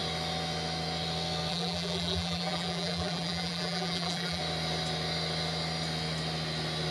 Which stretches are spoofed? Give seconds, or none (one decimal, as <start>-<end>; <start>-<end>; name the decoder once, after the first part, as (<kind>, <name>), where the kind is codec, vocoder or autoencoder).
1.5-4.4 (vocoder, BigVGAN v2)